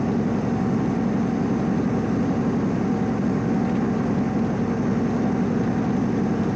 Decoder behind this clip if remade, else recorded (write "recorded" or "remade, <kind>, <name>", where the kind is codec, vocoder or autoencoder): recorded